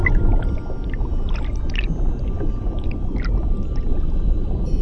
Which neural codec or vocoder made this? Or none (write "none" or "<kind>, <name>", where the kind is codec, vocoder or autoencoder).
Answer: none